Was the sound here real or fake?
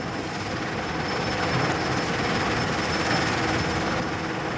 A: real